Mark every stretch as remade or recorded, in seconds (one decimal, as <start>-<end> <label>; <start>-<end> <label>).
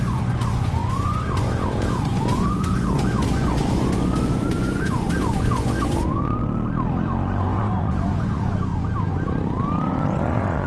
0.0-6.4 remade; 6.4-7.4 recorded; 7.4-8.7 remade; 8.7-9.8 recorded; 9.8-10.7 remade